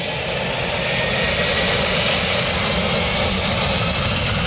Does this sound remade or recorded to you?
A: recorded